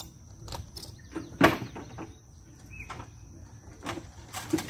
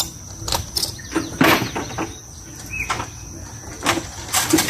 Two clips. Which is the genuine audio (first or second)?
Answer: second